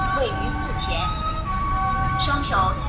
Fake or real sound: real